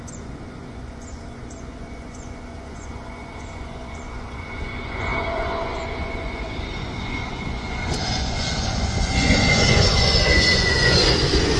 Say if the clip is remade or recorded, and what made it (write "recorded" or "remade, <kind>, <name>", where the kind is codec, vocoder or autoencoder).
remade, vocoder, Vocos